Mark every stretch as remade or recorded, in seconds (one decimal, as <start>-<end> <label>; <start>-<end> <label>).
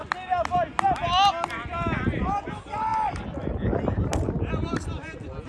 0.0-5.5 recorded